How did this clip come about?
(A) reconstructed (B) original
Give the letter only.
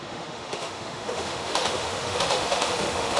A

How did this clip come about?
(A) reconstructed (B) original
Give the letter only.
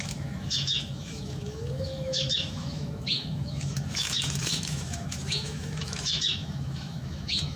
A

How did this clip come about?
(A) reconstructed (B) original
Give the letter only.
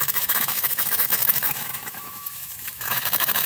A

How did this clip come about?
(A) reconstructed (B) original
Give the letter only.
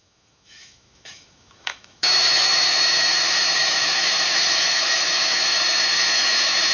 A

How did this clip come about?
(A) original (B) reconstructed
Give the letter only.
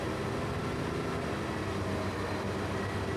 A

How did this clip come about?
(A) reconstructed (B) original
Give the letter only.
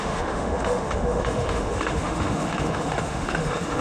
A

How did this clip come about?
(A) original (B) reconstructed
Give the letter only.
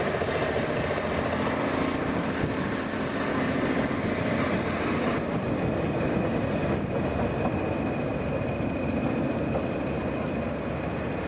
A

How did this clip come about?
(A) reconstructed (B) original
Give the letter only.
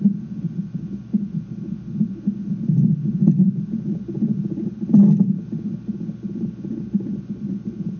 B